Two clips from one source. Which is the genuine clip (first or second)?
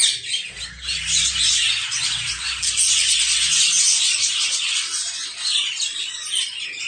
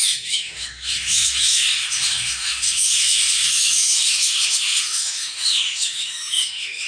first